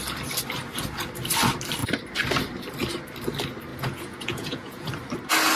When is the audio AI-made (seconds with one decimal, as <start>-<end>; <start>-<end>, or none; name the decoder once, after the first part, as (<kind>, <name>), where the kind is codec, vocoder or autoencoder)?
3.7-4.9 (vocoder, Vocos)